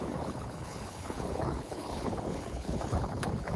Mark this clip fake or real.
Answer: fake